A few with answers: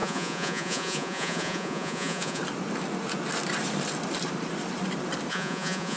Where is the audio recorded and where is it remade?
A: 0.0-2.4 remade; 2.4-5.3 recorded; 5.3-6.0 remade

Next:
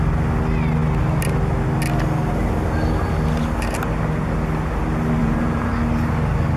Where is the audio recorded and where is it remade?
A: 0.0-5.2 recorded; 5.2-5.7 remade; 5.7-6.6 recorded

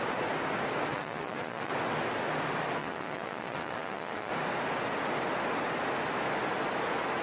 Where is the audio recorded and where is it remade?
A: 0.0-0.9 recorded; 0.9-1.7 remade; 1.7-2.8 recorded; 2.8-4.3 remade; 4.3-7.2 recorded

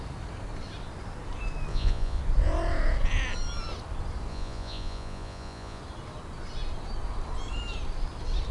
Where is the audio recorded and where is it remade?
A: 0.0-1.7 recorded; 1.7-2.2 remade; 2.2-4.3 recorded; 4.3-5.8 remade; 5.8-8.5 recorded